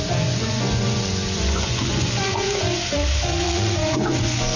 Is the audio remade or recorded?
remade